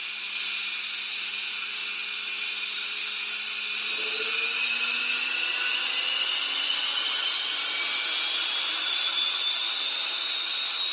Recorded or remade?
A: recorded